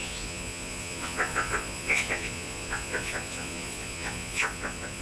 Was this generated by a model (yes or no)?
yes